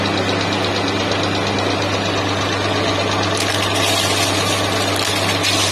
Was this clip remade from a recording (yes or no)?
no